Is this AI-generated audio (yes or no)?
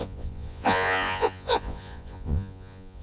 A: yes